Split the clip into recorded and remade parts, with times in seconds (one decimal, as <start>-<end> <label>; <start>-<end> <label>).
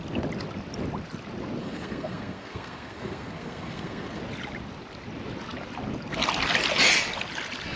0.0-1.6 recorded; 1.6-4.2 remade; 4.2-7.8 recorded